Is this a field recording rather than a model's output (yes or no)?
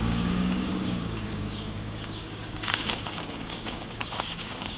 no